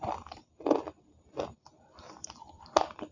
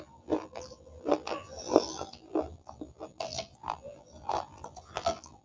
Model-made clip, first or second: second